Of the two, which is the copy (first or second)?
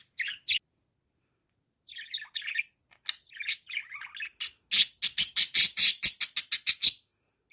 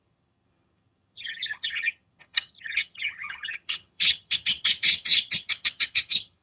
second